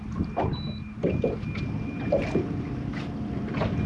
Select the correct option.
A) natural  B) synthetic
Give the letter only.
B